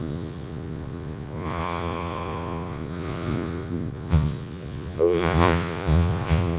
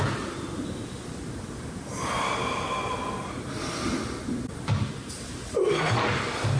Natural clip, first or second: second